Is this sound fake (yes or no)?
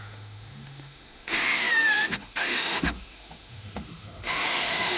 yes